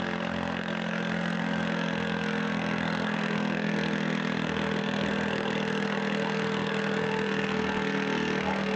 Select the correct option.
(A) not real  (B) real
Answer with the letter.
A